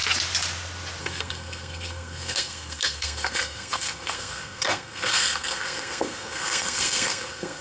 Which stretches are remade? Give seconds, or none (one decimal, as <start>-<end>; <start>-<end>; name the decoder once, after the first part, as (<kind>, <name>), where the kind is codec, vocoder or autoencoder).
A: 1.0-7.6 (codec, SNAC)